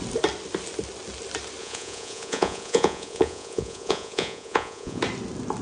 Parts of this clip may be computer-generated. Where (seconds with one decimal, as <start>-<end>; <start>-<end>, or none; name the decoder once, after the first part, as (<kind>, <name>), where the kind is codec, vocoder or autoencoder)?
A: 1.6-5.0 (vocoder, Vocos)